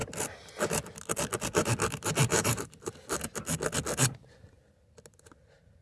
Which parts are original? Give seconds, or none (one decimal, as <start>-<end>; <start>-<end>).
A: 0.0-2.3; 2.9-5.8